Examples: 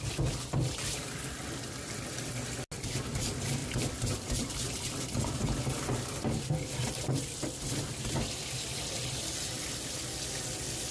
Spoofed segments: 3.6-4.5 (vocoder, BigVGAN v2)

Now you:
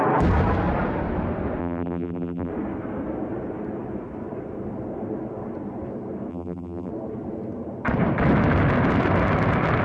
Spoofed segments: 1.6-2.5 (vocoder, BigVGAN v2); 6.3-6.9